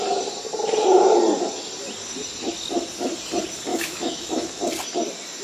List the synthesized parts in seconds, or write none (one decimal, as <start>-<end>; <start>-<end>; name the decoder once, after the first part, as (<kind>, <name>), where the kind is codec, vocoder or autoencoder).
3.7-4.6 (autoencoder, DAC-VAE)

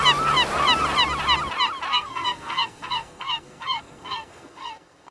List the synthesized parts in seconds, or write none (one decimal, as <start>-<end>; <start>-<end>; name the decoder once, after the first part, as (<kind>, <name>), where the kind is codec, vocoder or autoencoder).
1.9-5.1 (codec, SNAC)

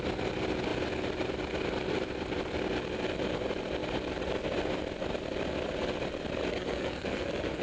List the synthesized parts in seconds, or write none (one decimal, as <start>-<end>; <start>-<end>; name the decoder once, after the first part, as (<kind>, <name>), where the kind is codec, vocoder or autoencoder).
6.5-7.6 (codec, SNAC)

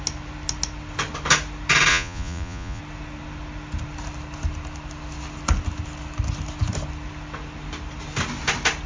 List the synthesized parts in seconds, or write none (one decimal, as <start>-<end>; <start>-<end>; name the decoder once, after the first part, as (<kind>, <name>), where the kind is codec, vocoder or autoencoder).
1.9-2.8 (vocoder, Vocos)

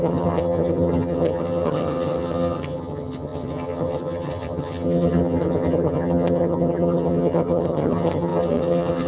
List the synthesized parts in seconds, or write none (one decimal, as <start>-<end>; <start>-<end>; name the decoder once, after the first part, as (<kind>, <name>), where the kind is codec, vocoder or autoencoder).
0.0-9.1 (vocoder, HiFi-GAN)

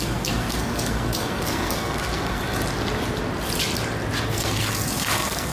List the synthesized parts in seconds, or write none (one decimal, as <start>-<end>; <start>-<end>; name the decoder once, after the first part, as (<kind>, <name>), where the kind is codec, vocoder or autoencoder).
0.0-2.4 (codec, SNAC); 4.3-5.5